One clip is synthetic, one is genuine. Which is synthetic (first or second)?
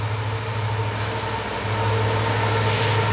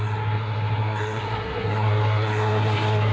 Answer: second